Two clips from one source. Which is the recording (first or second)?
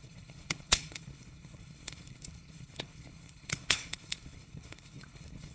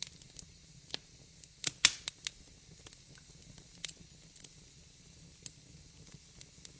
second